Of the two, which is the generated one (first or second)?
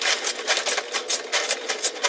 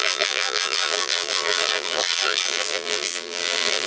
second